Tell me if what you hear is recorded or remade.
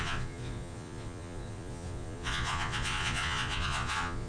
remade